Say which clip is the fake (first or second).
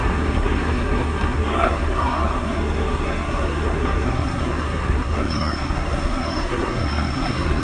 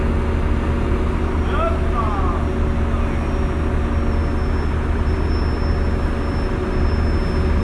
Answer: first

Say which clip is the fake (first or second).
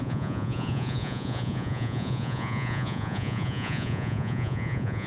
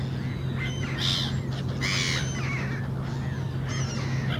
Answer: first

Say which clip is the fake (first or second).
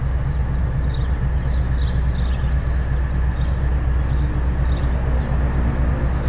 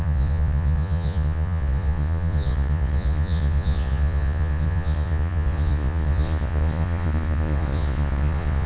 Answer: second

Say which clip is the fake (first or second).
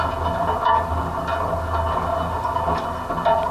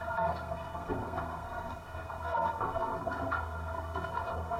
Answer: second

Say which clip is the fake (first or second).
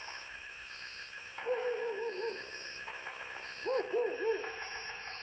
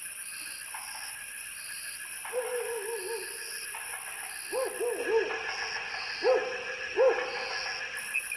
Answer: first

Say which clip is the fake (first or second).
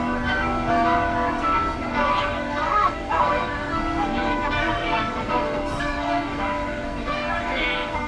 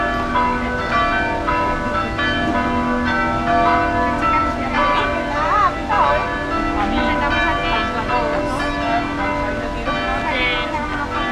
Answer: first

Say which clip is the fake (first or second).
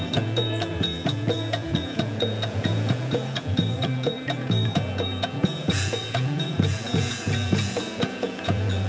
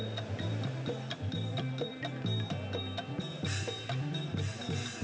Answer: first